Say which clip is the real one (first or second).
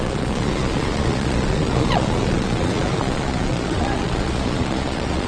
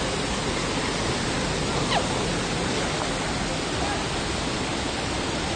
second